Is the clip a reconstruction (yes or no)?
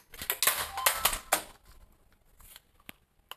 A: no